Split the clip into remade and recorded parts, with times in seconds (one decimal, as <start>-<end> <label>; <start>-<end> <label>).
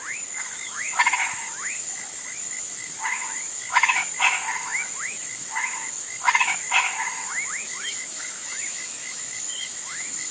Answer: 0.0-10.3 remade